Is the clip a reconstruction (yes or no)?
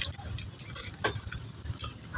no